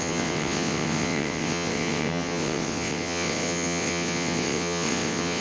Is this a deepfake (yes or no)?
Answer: yes